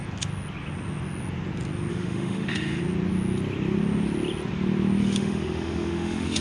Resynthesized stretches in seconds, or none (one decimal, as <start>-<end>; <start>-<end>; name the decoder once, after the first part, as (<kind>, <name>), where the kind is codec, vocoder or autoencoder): 1.9-2.8 (autoencoder, DAC-VAE); 5.0-6.4